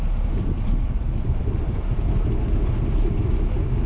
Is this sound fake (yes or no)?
no